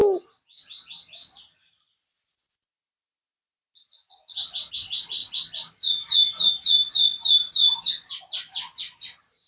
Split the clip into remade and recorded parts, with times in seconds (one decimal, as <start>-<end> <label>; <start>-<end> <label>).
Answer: 0.0-9.5 recorded